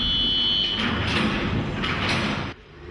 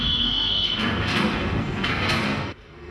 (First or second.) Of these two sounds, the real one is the first